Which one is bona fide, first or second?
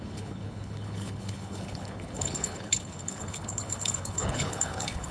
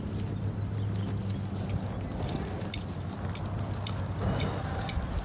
second